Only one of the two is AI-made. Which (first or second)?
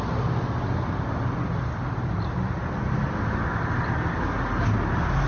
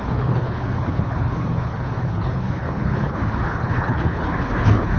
second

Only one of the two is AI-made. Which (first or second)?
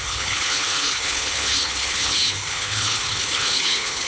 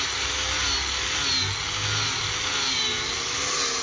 first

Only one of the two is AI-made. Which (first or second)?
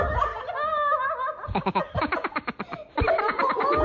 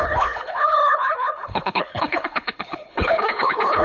second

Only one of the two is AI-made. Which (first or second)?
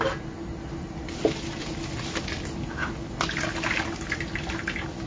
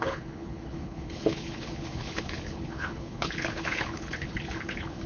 second